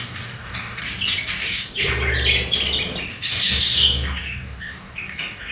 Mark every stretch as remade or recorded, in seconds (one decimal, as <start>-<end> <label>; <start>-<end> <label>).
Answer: 0.0-0.8 remade; 0.8-1.4 recorded; 1.4-1.9 remade; 1.9-3.1 recorded; 3.1-5.5 remade